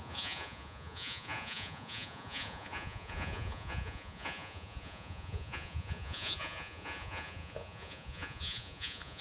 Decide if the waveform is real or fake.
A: fake